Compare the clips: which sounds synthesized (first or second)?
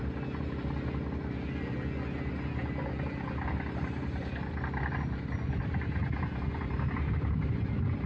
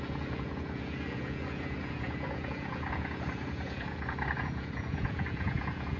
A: second